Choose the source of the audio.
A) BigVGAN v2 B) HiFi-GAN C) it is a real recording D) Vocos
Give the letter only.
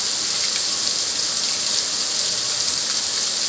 C